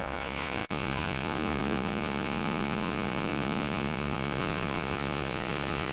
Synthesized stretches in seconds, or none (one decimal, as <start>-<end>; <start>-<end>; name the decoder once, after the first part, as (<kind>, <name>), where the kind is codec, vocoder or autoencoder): 0.0-5.9 (vocoder, Vocos)